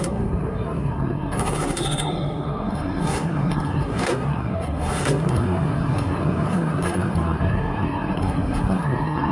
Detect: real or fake fake